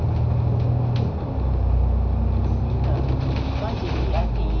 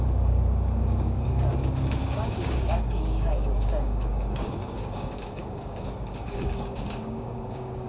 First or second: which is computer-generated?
second